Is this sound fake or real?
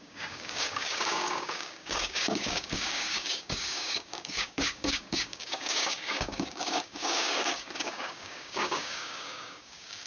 fake